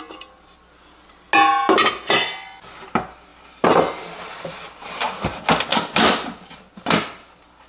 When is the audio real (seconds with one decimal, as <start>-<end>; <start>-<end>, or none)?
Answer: 0.0-7.7